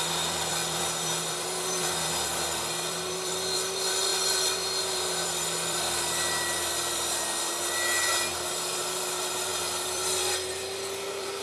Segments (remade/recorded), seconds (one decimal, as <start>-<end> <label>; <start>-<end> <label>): 0.0-11.4 remade